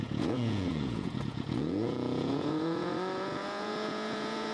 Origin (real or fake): fake